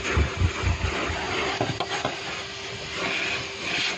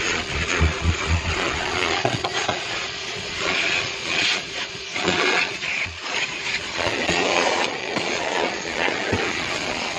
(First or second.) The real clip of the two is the first